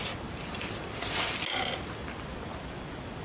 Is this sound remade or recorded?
recorded